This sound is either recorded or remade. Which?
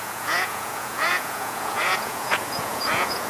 remade